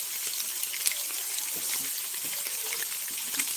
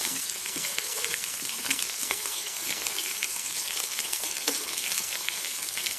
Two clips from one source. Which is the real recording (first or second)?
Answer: first